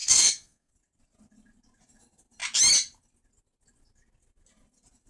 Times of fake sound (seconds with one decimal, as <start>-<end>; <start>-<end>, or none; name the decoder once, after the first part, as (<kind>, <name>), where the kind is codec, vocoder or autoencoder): 0.0-0.7 (codec, SNAC)